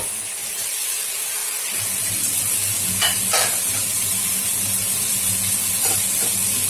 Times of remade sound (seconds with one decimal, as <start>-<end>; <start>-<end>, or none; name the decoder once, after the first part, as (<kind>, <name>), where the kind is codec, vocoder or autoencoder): 0.4-0.9 (vocoder, BigVGAN v2)